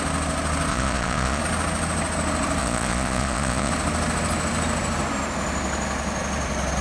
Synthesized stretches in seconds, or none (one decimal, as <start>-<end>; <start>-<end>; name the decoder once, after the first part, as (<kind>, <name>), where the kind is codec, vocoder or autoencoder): 0.7-1.4 (vocoder, Vocos); 2.6-3.7